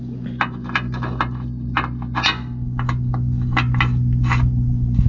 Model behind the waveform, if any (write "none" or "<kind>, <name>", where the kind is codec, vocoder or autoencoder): none